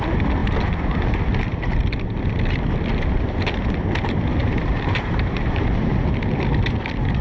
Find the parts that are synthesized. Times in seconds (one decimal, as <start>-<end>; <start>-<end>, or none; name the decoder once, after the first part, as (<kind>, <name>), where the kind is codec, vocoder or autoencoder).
4.4-6.0 (vocoder, BigVGAN v2)